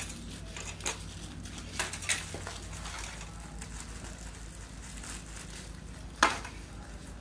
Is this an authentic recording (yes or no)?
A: yes